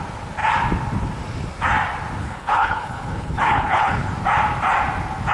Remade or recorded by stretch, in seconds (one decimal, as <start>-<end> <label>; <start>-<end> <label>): 0.0-2.2 recorded; 2.2-4.1 remade; 4.1-5.3 recorded